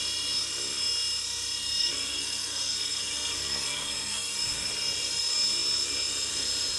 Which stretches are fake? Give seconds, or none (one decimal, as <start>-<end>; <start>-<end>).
1.8-4.3